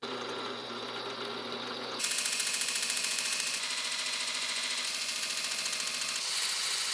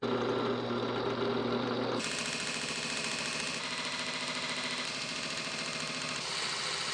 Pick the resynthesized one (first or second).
first